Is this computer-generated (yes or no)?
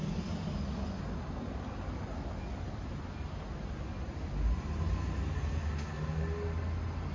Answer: no